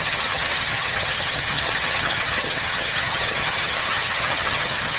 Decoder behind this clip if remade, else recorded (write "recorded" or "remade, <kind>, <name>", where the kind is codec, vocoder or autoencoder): remade, vocoder, HiFi-GAN